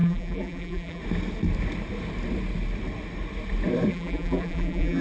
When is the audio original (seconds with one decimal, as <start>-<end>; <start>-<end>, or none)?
1.0-3.9